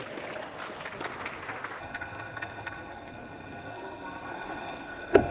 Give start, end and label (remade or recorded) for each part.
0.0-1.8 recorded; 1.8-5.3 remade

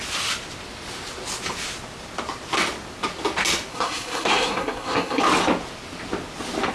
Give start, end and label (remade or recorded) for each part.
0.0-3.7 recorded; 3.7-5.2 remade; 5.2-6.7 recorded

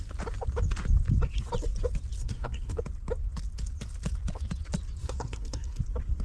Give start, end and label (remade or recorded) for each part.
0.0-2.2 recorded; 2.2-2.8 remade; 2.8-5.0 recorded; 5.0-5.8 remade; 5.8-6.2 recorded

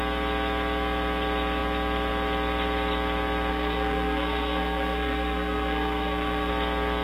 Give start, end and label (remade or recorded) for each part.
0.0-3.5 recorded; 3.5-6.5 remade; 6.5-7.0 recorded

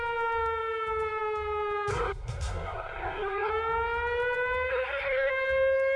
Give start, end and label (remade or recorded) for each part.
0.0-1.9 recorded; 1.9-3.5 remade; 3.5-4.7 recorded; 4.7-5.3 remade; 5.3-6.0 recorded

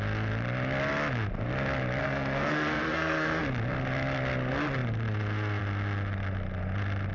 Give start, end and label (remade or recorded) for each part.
0.0-2.0 recorded; 2.0-3.4 remade; 3.4-7.1 recorded